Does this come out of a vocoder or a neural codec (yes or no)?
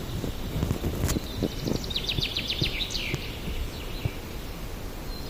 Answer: no